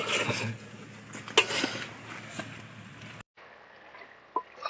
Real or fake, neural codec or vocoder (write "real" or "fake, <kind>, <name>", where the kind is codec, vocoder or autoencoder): real